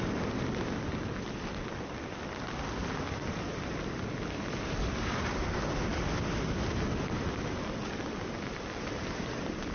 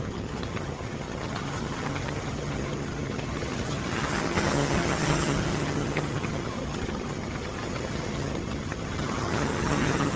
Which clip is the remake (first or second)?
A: second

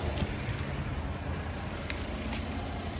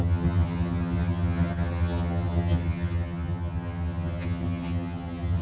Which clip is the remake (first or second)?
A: second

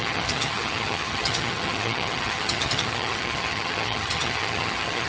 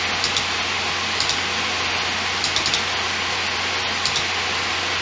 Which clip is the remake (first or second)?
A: first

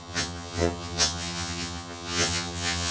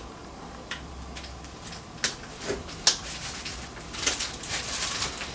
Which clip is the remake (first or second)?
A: first